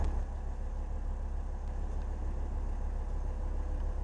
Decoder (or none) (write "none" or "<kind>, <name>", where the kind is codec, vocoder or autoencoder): none